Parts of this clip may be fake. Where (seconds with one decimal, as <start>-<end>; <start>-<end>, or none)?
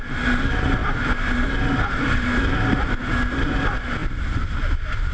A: none